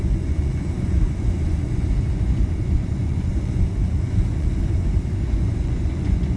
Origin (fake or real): fake